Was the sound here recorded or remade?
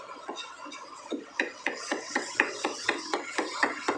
remade